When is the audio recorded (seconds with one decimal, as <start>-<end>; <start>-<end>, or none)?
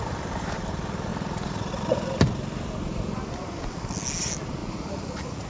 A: 0.0-1.1; 1.7-4.6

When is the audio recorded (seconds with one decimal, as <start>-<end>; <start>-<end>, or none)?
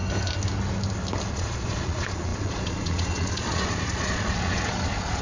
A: 0.0-1.3